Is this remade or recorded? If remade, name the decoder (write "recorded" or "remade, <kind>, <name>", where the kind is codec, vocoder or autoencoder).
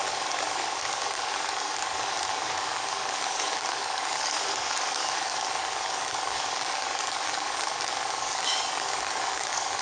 remade, codec, DAC